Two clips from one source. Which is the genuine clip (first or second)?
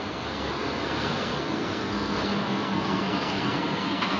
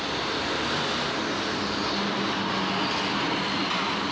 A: second